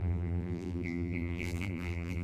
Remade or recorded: remade